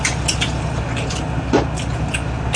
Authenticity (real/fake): real